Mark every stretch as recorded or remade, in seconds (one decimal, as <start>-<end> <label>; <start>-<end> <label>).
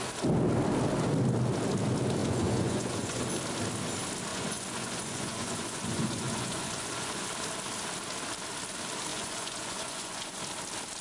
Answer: 0.0-2.2 recorded; 2.2-3.2 remade; 3.2-4.3 recorded; 4.3-7.3 remade; 7.3-9.1 recorded; 9.1-10.4 remade; 10.4-11.0 recorded